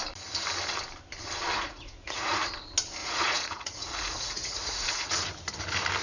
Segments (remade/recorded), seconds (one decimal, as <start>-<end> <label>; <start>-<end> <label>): 0.0-1.5 recorded; 1.5-2.5 remade; 2.5-3.0 recorded; 3.0-5.3 remade; 5.3-6.0 recorded